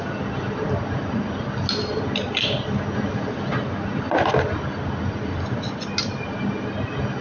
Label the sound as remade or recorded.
recorded